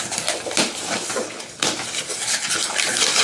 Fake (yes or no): no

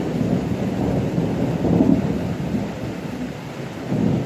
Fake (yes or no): no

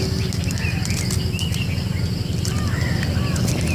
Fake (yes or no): no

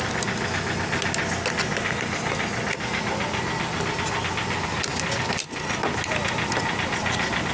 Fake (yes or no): no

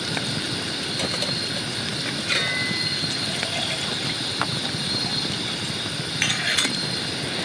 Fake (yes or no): no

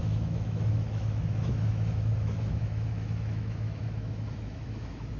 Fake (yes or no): yes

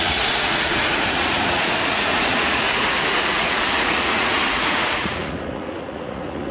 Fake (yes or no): yes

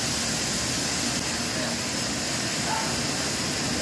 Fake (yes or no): no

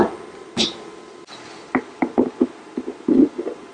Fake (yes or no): no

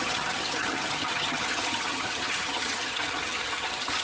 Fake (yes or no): yes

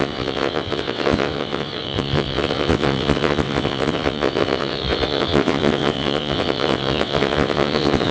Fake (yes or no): yes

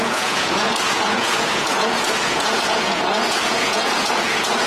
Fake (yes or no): yes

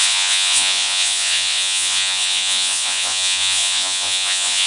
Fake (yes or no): yes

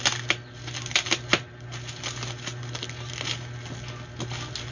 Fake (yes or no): no